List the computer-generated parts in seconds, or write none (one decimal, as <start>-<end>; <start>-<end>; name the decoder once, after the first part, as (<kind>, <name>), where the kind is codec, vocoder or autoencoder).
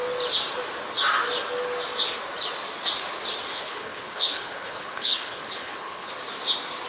3.5-6.1 (codec, HILCodec)